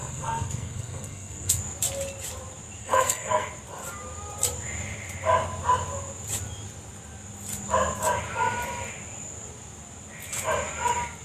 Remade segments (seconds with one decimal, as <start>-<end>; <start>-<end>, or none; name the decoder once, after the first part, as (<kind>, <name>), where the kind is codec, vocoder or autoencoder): 0.0-1.6 (codec, SNAC); 2.8-3.5